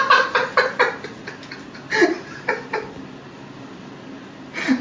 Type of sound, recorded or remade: recorded